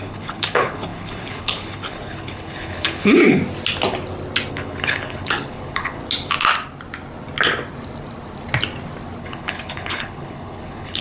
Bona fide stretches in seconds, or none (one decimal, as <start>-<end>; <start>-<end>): 3.4-4.5; 6.0-9.2